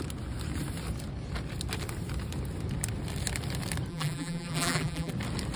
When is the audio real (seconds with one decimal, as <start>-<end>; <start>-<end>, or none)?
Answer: 0.0-3.9; 5.1-5.6